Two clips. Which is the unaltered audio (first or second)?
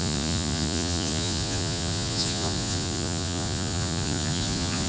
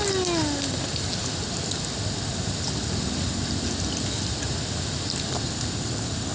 second